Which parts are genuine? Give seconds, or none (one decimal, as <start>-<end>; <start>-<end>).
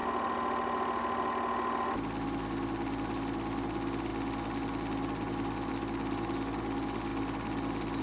0.0-8.0